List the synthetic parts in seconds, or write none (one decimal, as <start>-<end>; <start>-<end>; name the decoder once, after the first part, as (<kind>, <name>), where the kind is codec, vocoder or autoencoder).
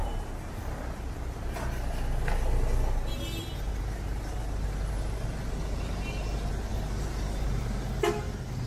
0.0-0.6 (vocoder, BigVGAN v2); 6.7-7.9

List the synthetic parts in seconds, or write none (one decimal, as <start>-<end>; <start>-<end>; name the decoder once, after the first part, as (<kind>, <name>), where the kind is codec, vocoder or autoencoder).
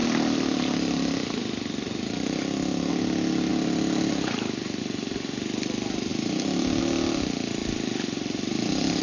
0.0-2.9 (vocoder, BigVGAN v2); 3.5-4.8; 6.1-6.8; 7.6-9.0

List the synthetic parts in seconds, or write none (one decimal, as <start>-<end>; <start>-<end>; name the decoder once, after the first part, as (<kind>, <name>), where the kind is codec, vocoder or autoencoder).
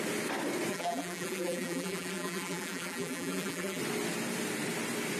0.7-3.8 (vocoder, BigVGAN v2)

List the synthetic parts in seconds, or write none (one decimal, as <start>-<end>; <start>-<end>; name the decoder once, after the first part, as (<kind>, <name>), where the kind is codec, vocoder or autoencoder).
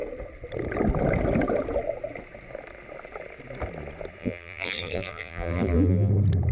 4.2-6.1 (vocoder, BigVGAN v2)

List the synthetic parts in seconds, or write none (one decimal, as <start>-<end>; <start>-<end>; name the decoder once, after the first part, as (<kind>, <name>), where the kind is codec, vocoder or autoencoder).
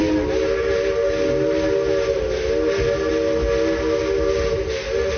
none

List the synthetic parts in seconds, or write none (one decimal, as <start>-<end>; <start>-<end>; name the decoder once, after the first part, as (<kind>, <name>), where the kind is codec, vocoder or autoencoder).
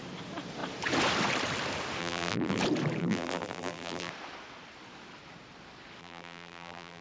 2.0-2.6 (vocoder, BigVGAN v2); 3.0-4.1; 6.0-7.0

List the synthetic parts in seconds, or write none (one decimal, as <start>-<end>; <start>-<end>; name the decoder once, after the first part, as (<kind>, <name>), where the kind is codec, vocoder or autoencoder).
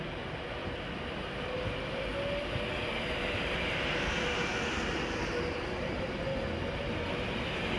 0.0-0.6 (vocoder, BigVGAN v2); 1.4-2.1; 2.9-4.5; 5.2-6.3; 7.1-7.8